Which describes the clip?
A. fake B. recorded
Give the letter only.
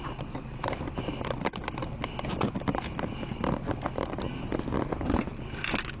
B